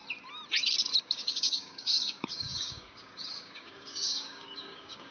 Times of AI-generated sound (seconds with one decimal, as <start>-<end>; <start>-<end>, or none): 1.0-5.1